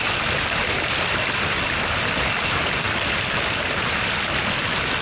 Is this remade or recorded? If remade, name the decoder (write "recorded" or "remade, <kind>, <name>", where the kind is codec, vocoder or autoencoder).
recorded